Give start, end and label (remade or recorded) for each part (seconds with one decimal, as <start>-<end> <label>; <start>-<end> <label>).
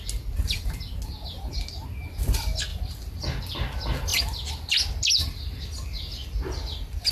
0.0-2.7 recorded; 2.7-3.4 remade; 3.4-6.2 recorded; 6.2-7.1 remade